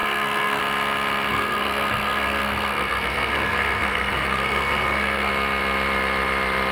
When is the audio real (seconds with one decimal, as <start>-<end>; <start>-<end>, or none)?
0.6-1.3; 5.3-6.7